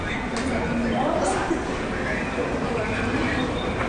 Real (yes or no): yes